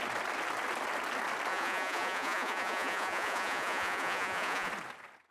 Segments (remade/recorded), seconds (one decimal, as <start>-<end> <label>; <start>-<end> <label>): 0.0-1.5 recorded; 1.5-4.7 remade; 4.7-5.3 recorded